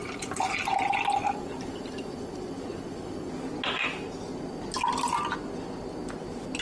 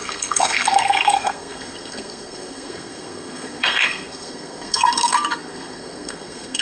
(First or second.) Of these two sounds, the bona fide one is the first